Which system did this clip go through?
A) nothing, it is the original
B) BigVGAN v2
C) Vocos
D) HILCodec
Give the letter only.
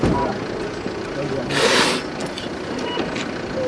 A